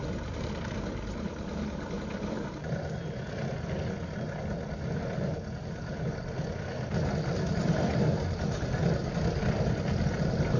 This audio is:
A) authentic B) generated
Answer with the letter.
A